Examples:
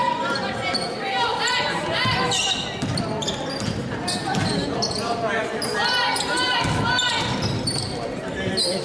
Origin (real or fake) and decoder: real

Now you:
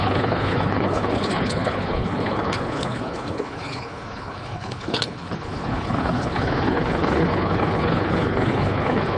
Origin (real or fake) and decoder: fake, codec, HILCodec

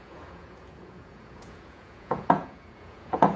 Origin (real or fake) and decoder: fake, vocoder, Vocos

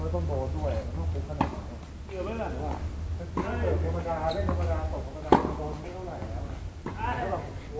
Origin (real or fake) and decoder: real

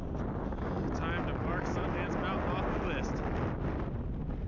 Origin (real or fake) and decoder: real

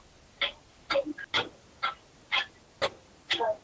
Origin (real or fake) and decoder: real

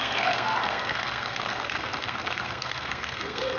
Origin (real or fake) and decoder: fake, codec, SNAC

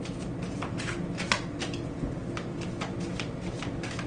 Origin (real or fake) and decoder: real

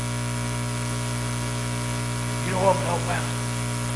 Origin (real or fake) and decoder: real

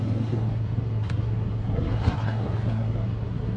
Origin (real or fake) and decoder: fake, codec, SNAC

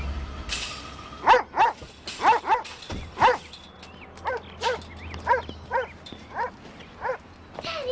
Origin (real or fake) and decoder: real